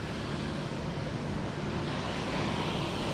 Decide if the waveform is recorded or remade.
remade